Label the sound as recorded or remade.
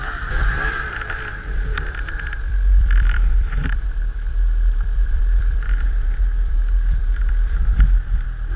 remade